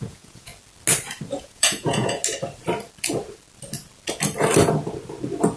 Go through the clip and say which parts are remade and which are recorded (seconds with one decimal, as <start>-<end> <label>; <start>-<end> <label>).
0.0-0.5 remade; 0.5-1.4 recorded; 1.4-2.2 remade; 2.2-5.6 recorded